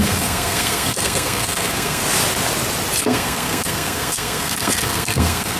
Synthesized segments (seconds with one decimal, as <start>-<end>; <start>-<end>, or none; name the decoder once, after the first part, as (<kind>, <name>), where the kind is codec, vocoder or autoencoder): 0.0-2.0 (codec, SNAC); 3.0-5.6